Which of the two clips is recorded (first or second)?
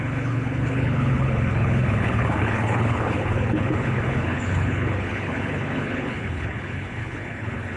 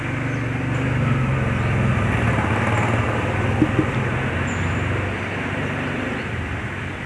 second